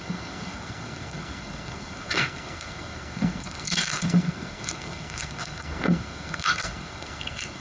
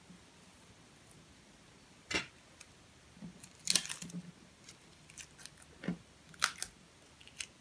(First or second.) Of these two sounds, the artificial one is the first